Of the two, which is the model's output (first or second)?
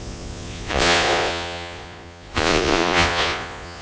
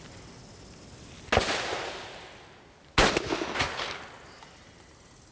first